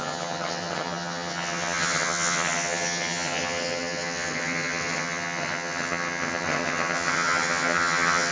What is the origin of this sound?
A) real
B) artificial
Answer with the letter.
B